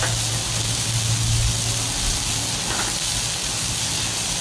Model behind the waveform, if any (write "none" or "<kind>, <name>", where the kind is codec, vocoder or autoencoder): none